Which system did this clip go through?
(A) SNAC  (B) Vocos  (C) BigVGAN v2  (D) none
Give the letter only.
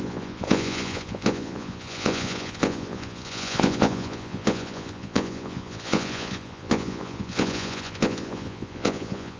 B